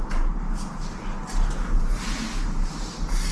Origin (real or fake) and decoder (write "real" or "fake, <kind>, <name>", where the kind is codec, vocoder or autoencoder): real